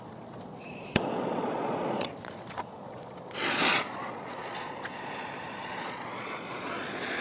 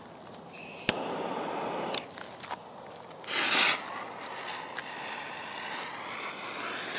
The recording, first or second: second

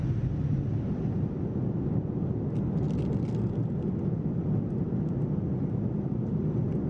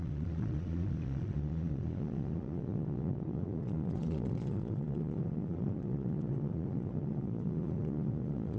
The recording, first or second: first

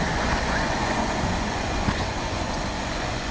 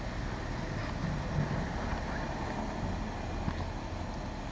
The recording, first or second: second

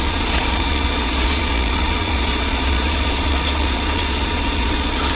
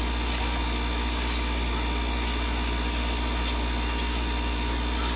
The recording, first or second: second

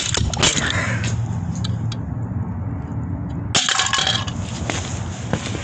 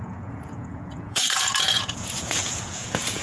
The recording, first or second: first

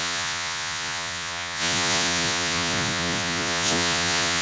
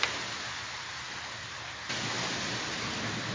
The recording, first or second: second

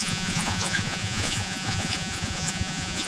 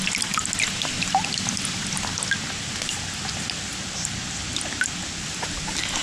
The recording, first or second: second